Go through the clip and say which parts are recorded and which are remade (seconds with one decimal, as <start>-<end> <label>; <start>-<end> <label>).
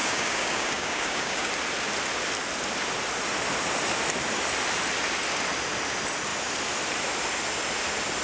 0.0-1.5 remade; 1.5-8.2 recorded